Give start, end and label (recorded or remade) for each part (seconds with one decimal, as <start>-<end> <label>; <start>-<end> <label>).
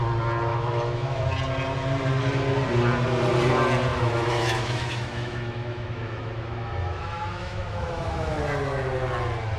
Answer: 0.0-0.5 recorded; 0.5-1.2 remade; 1.2-3.9 recorded; 3.9-8.4 remade; 8.4-9.6 recorded